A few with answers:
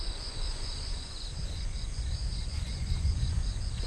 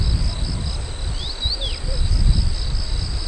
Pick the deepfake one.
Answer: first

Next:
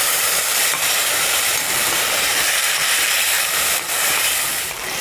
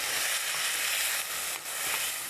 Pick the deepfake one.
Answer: first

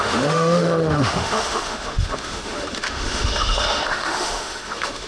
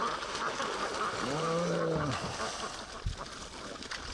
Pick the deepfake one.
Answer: first